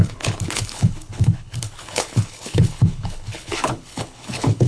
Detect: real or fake fake